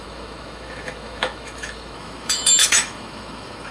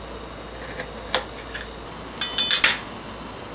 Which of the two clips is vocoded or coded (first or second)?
first